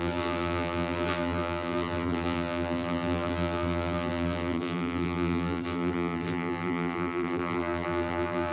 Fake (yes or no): yes